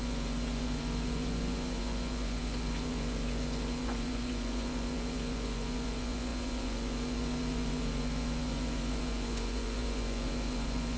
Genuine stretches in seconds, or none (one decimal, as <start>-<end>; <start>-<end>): none